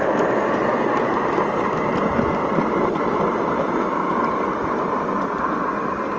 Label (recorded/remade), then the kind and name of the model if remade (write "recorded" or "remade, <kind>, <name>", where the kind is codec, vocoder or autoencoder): remade, vocoder, BigVGAN v2